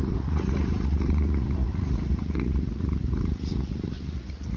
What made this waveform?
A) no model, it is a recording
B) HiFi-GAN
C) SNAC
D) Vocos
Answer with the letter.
D